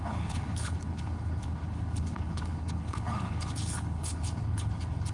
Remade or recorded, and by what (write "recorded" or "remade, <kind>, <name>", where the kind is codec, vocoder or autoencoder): remade, codec, HILCodec